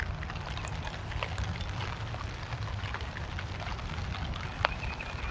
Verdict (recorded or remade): recorded